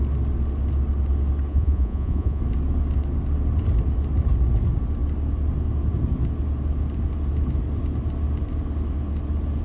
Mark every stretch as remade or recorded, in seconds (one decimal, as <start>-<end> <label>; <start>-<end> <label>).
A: 0.0-1.5 recorded; 1.5-2.4 remade; 2.4-9.6 recorded